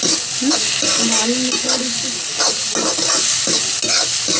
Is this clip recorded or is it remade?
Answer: recorded